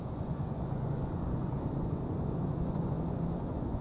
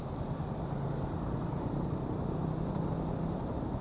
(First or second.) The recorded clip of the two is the second